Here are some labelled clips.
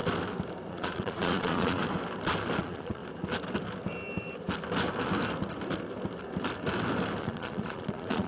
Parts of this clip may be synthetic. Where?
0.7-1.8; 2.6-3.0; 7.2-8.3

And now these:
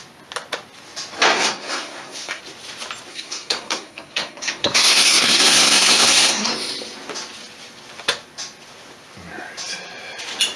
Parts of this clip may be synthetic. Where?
1.3-2.4; 3.1-6.5

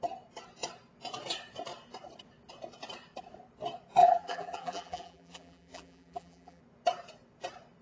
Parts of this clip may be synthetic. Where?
4.0-6.6

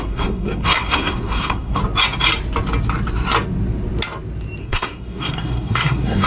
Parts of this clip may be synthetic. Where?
0.0-1.8; 4.6-6.3

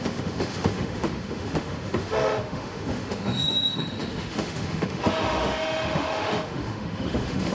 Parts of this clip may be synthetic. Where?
0.0-7.5

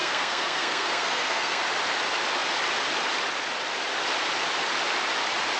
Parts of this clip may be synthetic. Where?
0.0-1.6

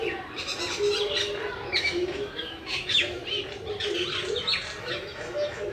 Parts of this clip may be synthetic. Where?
1.8-3.2; 4.8-5.7

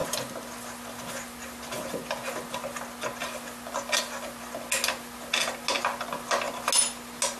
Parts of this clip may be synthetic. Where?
none